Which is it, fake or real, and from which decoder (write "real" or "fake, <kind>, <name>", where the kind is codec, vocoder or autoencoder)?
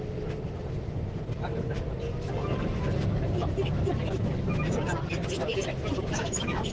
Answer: real